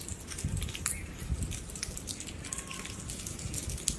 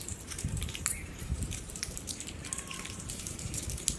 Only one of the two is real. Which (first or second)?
first